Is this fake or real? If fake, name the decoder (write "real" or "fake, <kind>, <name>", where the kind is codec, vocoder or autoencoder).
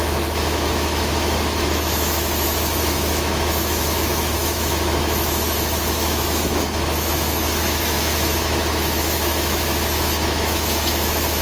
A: fake, autoencoder, DAC-VAE